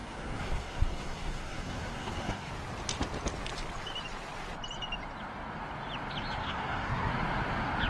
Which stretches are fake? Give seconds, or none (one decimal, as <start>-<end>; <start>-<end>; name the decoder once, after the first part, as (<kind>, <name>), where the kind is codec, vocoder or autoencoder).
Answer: 0.0-2.5 (codec, SNAC); 6.4-7.1